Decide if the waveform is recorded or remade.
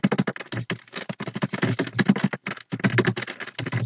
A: recorded